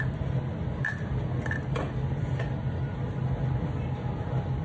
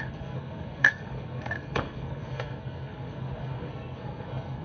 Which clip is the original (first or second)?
first